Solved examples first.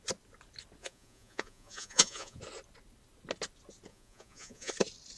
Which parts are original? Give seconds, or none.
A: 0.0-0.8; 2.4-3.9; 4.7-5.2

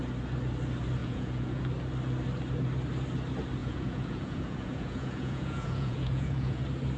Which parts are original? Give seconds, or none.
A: 0.0-1.0; 1.6-3.6; 6.6-7.0

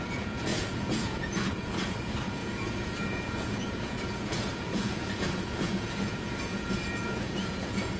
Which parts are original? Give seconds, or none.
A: none

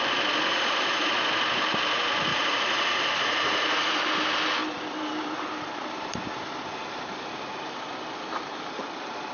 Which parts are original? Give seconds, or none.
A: 0.0-0.5; 1.1-2.3; 4.0-9.3

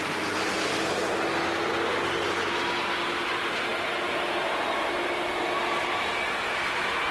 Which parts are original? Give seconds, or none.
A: 0.0-7.1

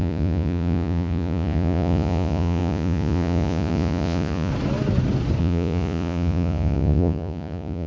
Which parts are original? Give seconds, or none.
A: 4.5-5.4

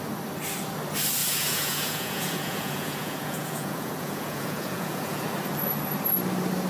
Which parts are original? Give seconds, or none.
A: 0.0-1.2; 5.2-6.7